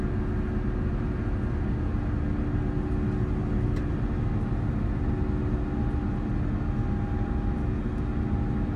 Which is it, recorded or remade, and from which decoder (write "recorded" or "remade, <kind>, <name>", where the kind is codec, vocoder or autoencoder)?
recorded